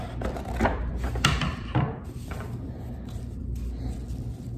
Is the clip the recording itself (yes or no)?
no